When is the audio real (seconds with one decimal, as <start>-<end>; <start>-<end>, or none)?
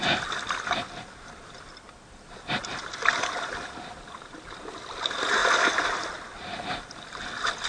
0.0-7.7